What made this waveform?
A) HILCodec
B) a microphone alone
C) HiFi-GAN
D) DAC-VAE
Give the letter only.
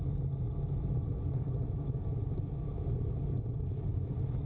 B